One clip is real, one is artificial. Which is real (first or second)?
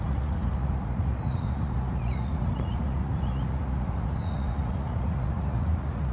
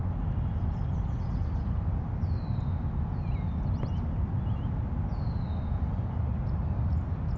second